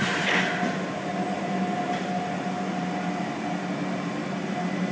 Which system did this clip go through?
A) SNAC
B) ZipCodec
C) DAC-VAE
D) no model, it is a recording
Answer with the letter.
D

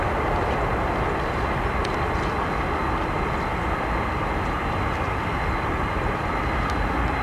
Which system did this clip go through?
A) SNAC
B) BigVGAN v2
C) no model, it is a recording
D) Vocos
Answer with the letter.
C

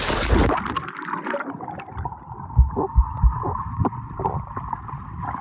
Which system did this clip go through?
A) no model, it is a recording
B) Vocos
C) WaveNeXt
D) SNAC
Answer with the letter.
A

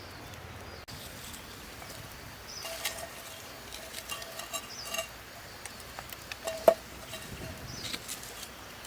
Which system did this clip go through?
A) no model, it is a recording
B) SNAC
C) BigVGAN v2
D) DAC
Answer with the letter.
A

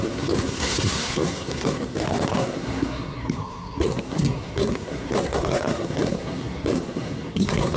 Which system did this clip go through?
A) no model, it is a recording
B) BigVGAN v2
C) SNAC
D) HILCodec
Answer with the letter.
C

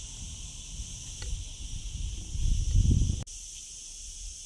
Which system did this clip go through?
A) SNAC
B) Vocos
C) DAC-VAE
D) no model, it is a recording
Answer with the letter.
D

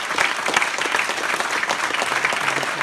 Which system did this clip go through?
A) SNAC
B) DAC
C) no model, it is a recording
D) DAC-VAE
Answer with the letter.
C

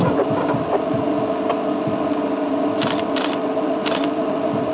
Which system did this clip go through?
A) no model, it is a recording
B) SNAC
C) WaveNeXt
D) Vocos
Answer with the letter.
A